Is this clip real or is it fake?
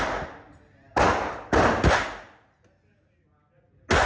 real